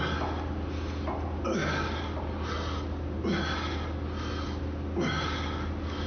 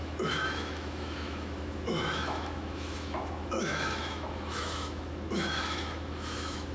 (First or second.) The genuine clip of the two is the first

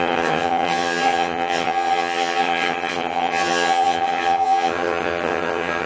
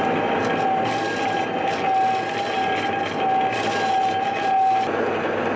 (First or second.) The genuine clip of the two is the second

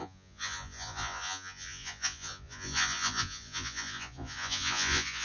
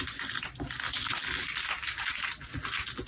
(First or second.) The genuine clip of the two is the second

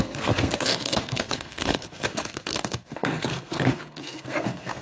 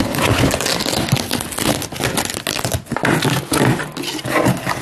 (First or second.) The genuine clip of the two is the second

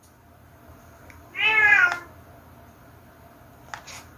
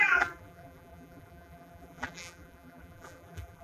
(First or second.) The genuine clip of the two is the first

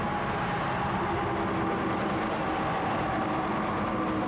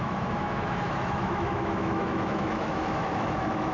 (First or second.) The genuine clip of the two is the first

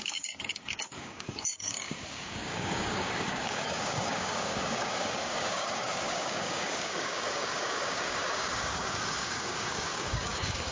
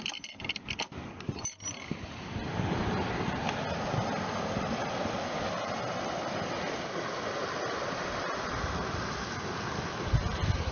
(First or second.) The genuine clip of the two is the second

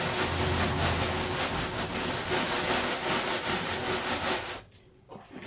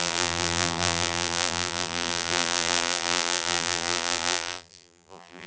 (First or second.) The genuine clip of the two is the first